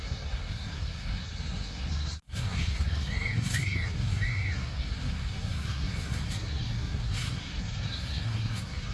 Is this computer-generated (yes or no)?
yes